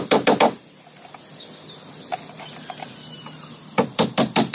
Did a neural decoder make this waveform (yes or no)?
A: yes